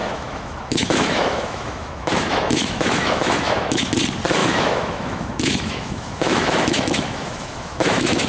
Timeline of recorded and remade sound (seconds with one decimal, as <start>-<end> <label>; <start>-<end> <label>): 0.0-3.9 remade; 3.9-4.4 recorded; 4.4-8.3 remade